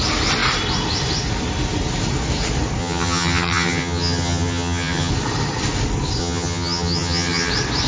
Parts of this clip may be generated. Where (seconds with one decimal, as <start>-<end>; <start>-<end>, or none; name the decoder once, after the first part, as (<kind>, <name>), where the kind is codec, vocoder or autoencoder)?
2.8-5.1 (vocoder, HiFi-GAN); 6.2-7.5